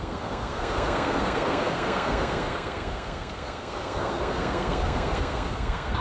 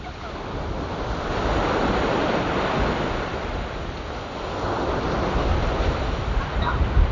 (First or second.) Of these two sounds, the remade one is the first